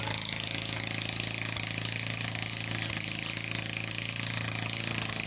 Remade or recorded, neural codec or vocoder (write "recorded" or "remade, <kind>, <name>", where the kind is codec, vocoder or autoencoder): recorded